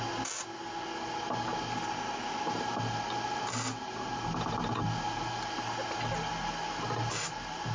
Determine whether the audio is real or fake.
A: real